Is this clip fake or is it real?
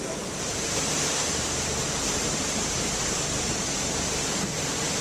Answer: fake